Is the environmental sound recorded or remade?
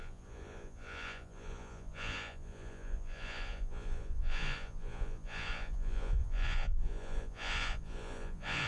remade